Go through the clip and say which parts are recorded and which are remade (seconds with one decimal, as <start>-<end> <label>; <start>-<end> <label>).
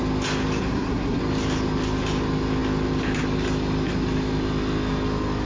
0.0-0.6 recorded; 0.6-1.2 remade; 1.2-5.4 recorded